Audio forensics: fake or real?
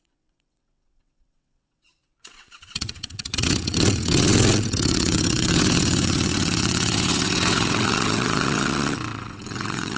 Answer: fake